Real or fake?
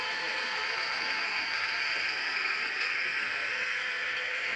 fake